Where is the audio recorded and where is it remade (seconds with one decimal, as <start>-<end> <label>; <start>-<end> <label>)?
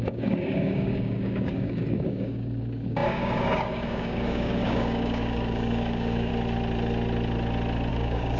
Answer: 0.0-6.3 remade; 6.3-7.9 recorded; 7.9-8.4 remade